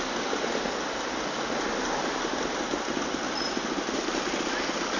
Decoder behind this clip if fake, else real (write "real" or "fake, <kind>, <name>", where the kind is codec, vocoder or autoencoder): real